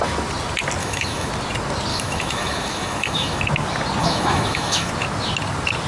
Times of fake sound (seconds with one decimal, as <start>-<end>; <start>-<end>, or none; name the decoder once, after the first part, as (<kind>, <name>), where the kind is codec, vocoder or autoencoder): 0.8-1.3 (autoencoder, DAC-VAE); 1.9-3.4; 4.0-4.9